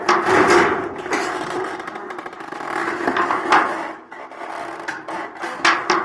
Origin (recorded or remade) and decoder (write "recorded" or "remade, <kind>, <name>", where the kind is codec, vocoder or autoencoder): recorded